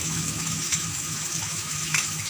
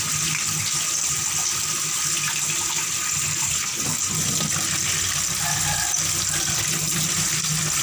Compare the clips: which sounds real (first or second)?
second